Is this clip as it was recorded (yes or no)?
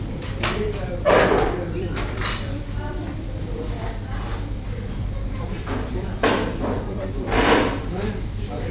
no